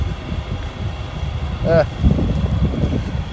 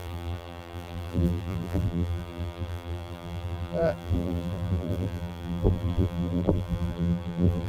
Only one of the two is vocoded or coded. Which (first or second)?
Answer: second